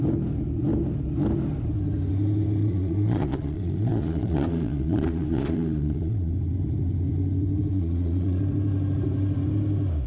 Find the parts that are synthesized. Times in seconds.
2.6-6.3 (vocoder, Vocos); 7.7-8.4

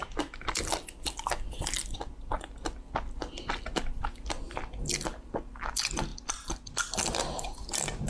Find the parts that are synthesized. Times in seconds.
none

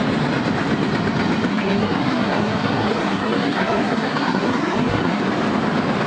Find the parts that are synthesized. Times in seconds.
1.5-5.2 (codec, SNAC)

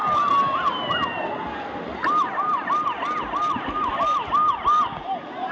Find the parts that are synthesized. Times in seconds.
none